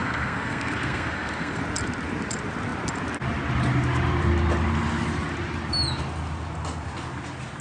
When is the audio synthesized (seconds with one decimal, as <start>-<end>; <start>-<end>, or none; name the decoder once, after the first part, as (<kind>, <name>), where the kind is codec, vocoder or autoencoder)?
0.0-1.6 (codec, SNAC)